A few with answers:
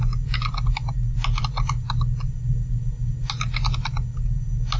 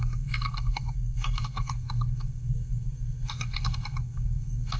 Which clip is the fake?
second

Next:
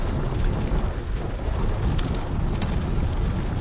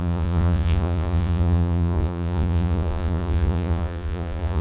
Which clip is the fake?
second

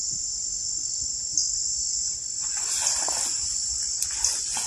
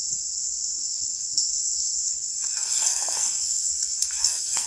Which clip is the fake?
second